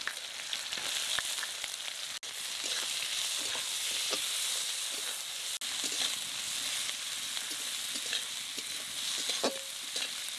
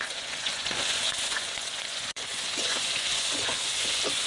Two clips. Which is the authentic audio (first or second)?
first